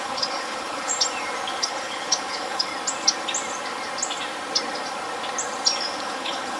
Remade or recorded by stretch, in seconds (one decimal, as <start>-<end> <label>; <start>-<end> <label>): 0.0-0.9 remade; 0.9-1.6 recorded; 1.6-2.7 remade; 2.7-6.0 recorded; 6.0-6.6 remade